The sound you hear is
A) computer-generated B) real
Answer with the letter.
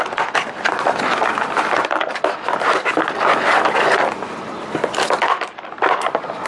B